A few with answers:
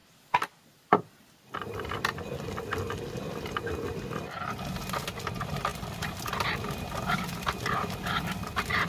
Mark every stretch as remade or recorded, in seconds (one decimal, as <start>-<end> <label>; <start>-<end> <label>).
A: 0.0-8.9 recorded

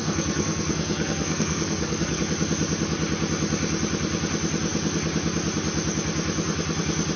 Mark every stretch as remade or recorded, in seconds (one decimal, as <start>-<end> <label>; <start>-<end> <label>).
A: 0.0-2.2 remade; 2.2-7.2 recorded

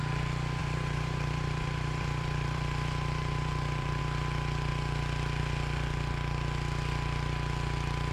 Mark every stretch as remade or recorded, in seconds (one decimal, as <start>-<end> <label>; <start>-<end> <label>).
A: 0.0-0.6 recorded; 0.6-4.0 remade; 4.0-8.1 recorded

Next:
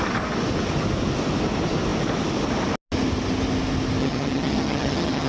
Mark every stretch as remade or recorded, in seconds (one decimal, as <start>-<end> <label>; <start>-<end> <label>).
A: 0.0-4.0 recorded; 4.0-5.3 remade

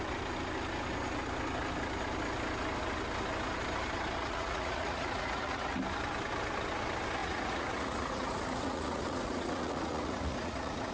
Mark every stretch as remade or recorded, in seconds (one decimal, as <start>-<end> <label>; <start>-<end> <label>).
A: 0.0-4.2 recorded; 4.2-5.8 remade; 5.8-7.2 recorded; 7.2-10.9 remade

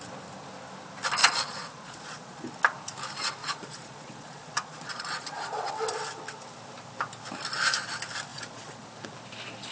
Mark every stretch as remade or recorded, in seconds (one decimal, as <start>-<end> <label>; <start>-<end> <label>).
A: 0.0-1.2 recorded; 1.2-2.4 remade; 2.4-3.4 recorded; 3.4-5.7 remade; 5.7-8.3 recorded; 8.3-8.9 remade; 8.9-9.7 recorded